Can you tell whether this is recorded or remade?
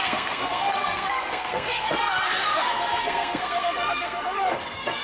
remade